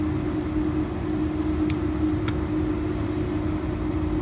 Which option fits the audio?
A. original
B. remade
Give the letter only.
A